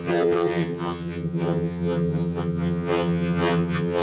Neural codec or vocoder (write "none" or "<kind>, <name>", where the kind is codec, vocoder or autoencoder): vocoder, HiFi-GAN